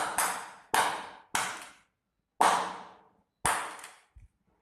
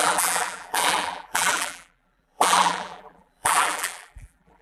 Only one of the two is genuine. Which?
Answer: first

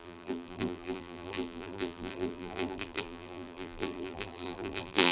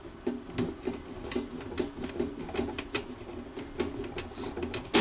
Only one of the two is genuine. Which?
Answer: second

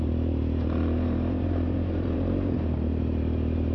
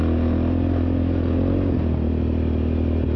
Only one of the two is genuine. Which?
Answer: second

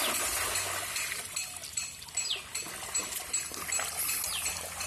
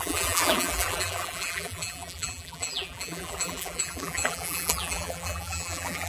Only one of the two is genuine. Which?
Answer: first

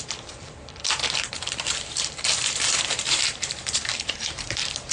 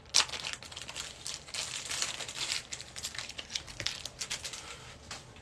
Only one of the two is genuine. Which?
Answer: second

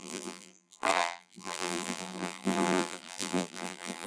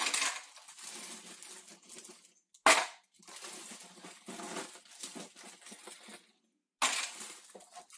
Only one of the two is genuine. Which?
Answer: second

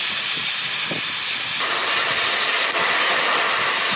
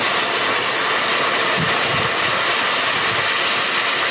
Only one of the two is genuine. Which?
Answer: second